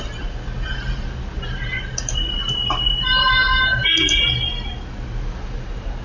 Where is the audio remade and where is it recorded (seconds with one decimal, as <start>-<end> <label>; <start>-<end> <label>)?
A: 0.0-6.0 recorded